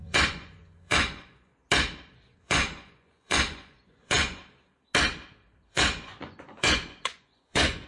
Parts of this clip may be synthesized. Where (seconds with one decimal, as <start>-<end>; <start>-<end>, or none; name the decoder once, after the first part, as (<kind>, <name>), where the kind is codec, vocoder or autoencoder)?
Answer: 0.0-1.5 (vocoder, Vocos); 2.4-4.4; 5.7-7.9